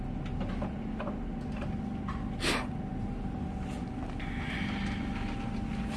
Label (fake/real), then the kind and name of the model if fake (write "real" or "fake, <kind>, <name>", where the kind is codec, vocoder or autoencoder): real